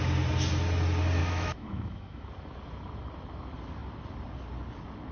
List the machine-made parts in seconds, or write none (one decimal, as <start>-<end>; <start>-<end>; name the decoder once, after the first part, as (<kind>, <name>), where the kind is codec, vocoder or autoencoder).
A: 1.2-2.3 (autoencoder, DAC-VAE)